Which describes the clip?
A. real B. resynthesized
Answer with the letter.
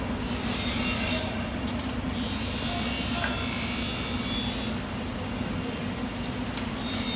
A